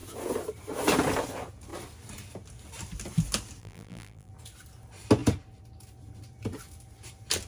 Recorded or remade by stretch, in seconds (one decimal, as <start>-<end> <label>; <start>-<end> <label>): 0.0-3.6 recorded; 3.6-4.3 remade; 4.3-7.5 recorded